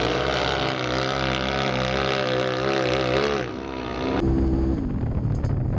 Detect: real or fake real